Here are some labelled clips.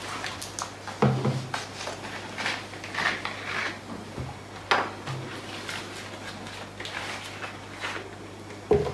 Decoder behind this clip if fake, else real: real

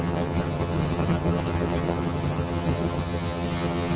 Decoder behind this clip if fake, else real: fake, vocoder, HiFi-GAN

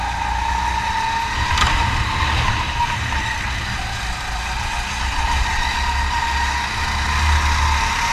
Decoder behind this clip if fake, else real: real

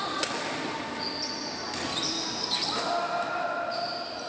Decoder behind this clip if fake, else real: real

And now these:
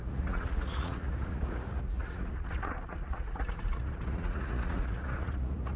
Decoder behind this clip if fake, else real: fake, vocoder, Vocos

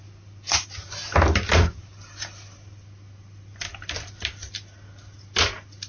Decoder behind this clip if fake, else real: real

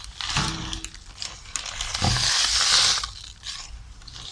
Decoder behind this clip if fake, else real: real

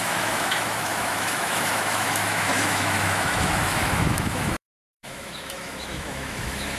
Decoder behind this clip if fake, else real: fake, autoencoder, DAC-VAE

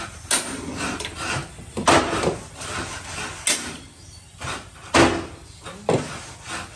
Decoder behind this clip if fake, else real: real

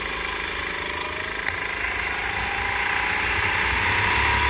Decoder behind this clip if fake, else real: real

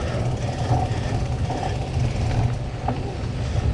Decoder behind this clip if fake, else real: real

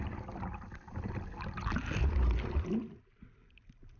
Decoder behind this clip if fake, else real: real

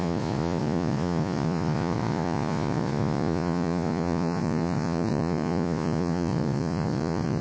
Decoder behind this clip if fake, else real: fake, vocoder, Vocos